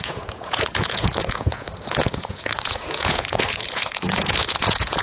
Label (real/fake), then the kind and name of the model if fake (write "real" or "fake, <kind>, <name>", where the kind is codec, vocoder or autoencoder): fake, vocoder, Vocos